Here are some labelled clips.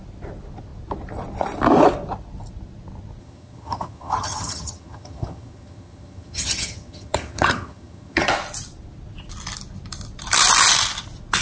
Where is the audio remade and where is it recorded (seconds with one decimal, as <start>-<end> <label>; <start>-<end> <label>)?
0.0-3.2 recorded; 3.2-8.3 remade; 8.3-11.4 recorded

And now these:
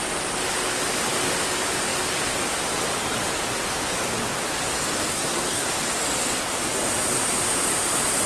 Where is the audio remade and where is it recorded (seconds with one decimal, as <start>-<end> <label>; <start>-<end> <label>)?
0.0-5.1 recorded; 5.1-5.7 remade; 5.7-8.3 recorded

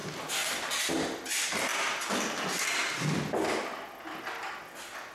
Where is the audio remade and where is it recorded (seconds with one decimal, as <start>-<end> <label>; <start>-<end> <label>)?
0.0-5.1 recorded

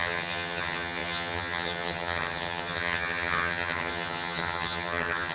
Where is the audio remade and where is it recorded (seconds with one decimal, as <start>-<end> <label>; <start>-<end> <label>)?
0.0-5.3 remade

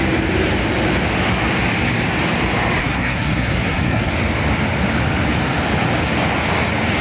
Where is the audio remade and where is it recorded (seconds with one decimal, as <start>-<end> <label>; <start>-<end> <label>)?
0.0-2.8 recorded; 2.8-4.1 remade; 4.1-7.0 recorded

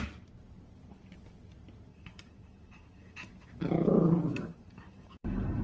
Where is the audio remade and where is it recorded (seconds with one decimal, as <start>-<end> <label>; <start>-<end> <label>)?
0.0-1.9 recorded; 1.9-3.3 remade; 3.3-4.3 recorded; 4.3-5.6 remade

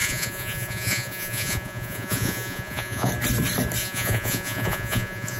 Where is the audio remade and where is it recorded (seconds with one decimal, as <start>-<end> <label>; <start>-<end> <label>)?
0.0-3.1 remade; 3.1-3.8 recorded; 3.8-5.4 remade